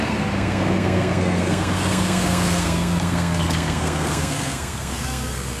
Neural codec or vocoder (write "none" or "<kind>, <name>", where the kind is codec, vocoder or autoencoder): codec, SNAC